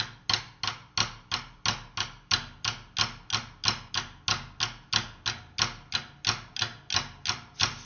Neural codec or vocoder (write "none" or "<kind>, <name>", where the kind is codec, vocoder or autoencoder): none